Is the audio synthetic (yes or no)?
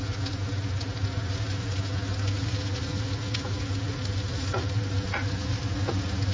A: no